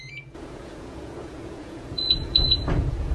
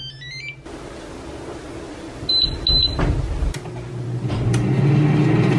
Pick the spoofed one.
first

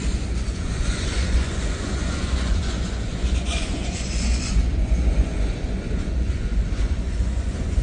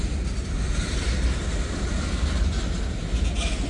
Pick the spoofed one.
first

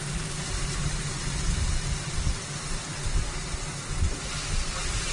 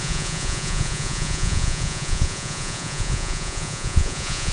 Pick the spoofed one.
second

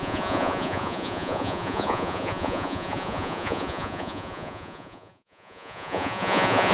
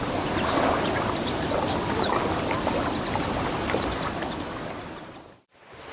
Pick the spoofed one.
first